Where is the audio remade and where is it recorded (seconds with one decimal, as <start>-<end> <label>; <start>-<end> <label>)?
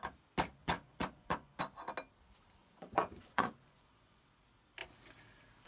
0.0-0.6 recorded; 0.6-1.6 remade; 1.6-2.6 recorded; 2.6-4.2 remade; 4.2-5.7 recorded